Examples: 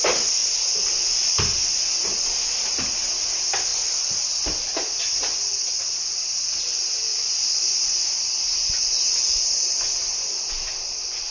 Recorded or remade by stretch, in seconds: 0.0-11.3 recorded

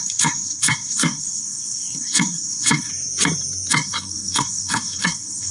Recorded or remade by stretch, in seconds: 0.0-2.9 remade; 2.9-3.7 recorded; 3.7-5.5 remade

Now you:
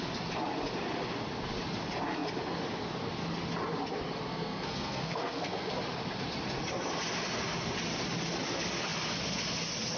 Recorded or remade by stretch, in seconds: 0.0-4.3 recorded; 4.3-5.7 remade; 5.7-10.0 recorded

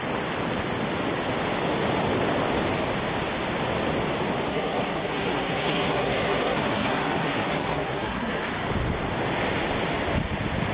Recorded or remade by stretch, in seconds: 0.0-4.5 recorded; 4.5-8.4 remade; 8.4-10.7 recorded

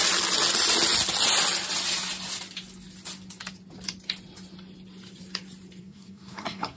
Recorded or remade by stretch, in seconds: 0.0-5.8 recorded; 5.8-6.8 remade

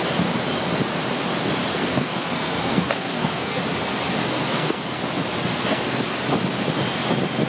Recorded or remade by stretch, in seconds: 0.0-1.7 recorded; 1.7-3.6 remade; 3.6-4.2 recorded; 4.2-5.0 remade; 5.0-5.5 recorded; 5.5-6.0 remade; 6.0-7.5 recorded